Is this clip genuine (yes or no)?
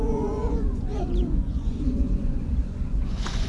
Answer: no